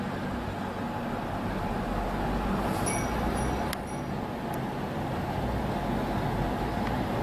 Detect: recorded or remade recorded